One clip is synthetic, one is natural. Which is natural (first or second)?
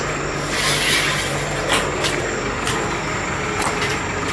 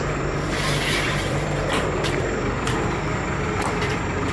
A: first